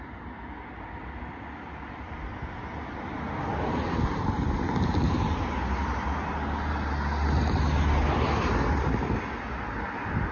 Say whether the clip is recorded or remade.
recorded